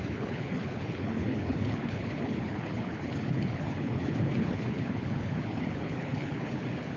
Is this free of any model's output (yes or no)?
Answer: no